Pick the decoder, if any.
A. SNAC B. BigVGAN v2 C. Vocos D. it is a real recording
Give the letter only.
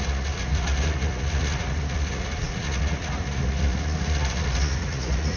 C